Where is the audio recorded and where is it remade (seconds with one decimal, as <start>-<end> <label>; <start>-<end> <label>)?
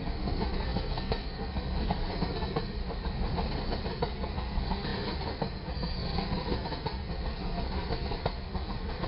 0.0-2.8 remade; 2.8-3.9 recorded; 3.9-9.1 remade